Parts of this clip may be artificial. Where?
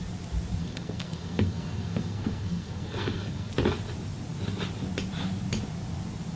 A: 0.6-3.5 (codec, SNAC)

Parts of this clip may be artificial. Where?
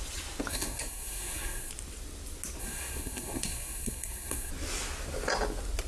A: 0.5-1.7 (codec, SNAC); 2.6-4.5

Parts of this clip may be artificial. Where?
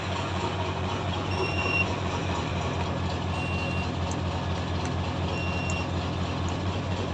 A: 0.0-2.5 (vocoder, Vocos); 6.5-7.1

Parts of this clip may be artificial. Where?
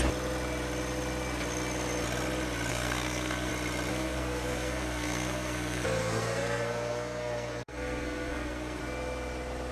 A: 2.7-3.5 (codec, SNAC); 3.9-8.8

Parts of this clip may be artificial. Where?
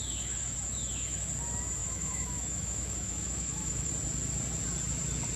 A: 0.0-1.3 (autoencoder, DAC-VAE); 1.8-3.9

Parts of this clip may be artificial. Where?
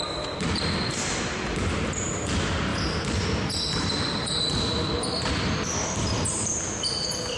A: none